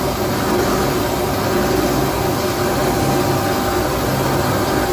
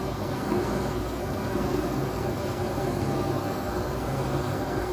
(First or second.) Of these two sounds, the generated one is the second